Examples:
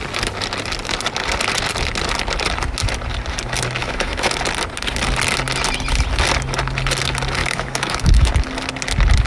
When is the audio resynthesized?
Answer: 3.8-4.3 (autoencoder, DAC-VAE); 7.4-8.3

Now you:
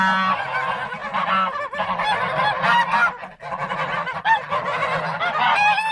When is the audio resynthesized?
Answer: none

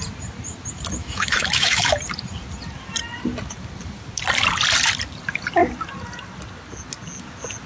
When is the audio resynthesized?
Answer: 1.0-1.9 (autoencoder, DAC-VAE)

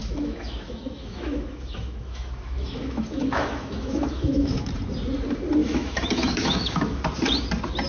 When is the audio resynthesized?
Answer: 0.0-4.7 (autoencoder, DAC-VAE); 5.6-7.0

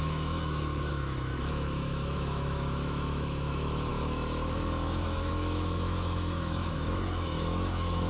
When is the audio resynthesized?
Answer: 0.0-8.1 (autoencoder, DAC-VAE)

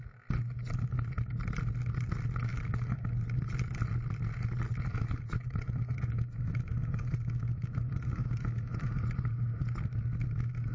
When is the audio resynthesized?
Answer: 2.5-3.0 (autoencoder, DAC-VAE); 4.9-8.9

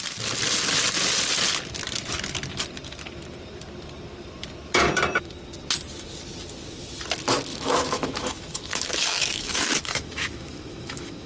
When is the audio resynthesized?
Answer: 7.5-11.3 (autoencoder, DAC-VAE)

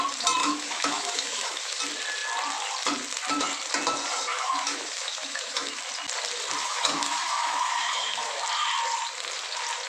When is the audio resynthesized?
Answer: 0.4-1.8 (autoencoder, DAC-VAE); 4.3-5.8; 6.6-8.4